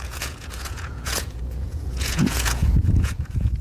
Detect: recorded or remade remade